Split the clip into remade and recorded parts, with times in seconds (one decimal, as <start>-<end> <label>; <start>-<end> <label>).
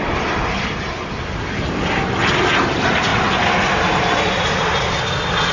0.0-5.5 recorded